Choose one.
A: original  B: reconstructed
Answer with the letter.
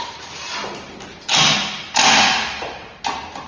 A